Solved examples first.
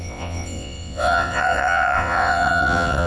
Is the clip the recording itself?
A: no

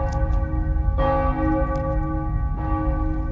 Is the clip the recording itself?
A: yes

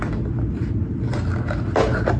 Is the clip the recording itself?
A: yes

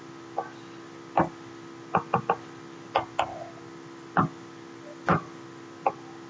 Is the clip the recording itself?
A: yes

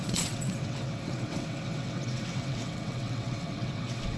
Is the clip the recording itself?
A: no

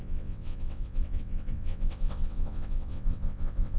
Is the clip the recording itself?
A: no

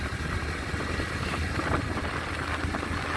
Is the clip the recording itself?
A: yes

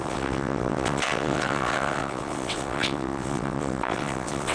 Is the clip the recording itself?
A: no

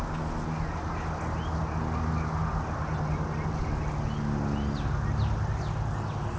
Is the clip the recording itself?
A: yes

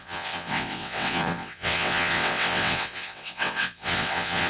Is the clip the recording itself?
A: no